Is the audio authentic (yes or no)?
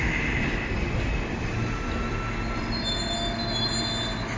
yes